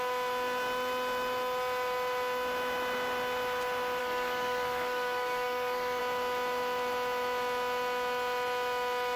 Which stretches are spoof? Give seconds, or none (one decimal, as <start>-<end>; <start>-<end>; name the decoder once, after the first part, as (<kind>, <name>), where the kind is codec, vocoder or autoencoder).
4.0-6.0 (codec, SNAC)